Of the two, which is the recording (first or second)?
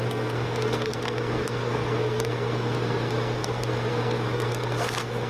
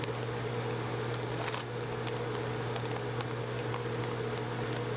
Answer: second